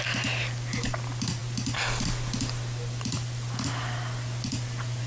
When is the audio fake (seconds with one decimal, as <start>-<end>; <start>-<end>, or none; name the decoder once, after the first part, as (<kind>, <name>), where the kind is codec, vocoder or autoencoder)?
none